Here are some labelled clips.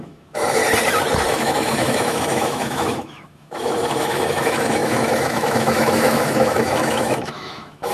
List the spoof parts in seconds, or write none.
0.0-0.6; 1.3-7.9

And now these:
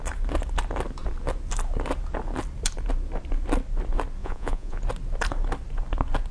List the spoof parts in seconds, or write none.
4.2-4.8

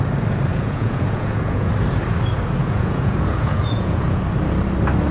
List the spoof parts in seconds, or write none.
0.5-1.7; 2.6-4.2

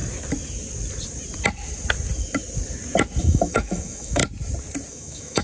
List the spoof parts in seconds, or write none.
3.2-4.2; 4.9-5.4

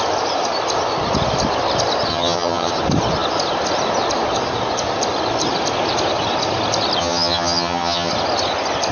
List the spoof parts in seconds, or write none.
2.1-2.7; 7.0-8.1

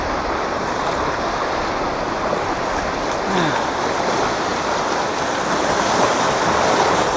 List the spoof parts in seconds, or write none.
4.5-6.1

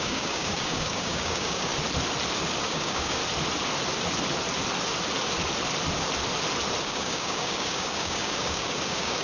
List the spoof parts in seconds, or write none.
0.0-1.7; 2.6-3.2; 6.8-9.2

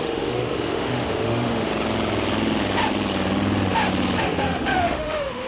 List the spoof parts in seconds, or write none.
0.0-1.7; 4.2-5.5